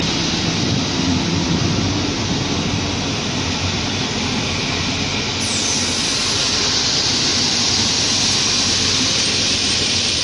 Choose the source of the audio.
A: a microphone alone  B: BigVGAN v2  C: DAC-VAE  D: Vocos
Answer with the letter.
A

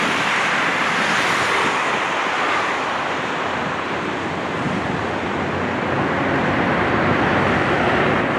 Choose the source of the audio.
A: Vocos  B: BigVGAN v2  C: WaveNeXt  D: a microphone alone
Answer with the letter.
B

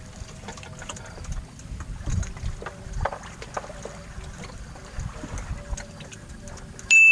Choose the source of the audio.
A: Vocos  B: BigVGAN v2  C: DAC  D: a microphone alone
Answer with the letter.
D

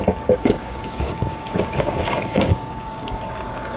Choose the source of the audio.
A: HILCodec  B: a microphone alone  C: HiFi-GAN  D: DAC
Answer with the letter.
D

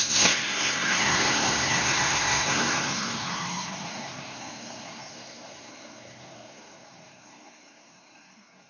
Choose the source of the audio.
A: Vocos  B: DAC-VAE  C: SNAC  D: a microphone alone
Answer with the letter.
C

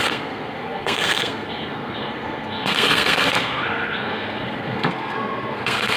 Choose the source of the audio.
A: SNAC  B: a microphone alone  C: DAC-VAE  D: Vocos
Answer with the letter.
A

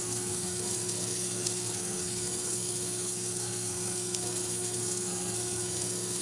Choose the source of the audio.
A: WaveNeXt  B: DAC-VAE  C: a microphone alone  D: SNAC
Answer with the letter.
D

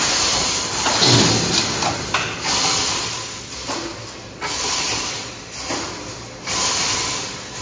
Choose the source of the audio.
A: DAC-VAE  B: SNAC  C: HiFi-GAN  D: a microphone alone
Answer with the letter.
D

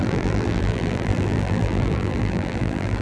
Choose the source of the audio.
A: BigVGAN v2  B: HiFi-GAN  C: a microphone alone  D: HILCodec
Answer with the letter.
A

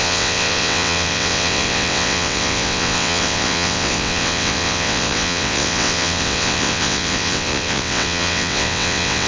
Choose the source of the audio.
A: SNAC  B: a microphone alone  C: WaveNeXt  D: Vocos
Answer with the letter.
C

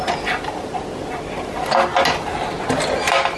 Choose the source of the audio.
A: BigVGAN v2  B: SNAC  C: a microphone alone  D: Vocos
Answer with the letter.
C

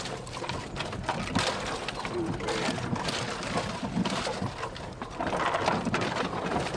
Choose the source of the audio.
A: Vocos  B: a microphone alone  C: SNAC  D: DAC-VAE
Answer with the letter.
B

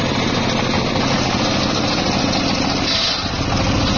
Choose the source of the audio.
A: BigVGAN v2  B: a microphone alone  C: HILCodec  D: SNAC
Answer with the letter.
B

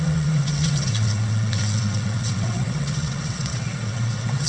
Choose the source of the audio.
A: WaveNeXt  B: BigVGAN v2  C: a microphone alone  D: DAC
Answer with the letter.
A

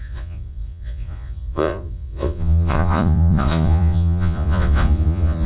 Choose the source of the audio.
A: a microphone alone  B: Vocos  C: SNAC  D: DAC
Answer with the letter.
B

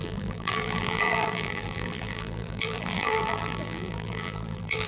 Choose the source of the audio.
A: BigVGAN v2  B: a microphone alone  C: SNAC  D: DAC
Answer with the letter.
A